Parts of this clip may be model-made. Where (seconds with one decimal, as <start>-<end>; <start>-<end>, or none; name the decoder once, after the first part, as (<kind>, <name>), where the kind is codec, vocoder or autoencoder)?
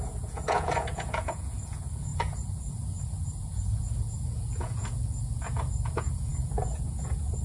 0.0-7.4 (vocoder, Vocos)